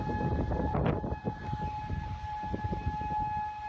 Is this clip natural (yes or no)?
yes